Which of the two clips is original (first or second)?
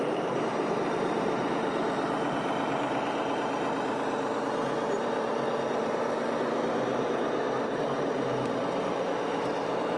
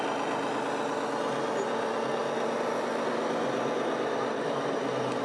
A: second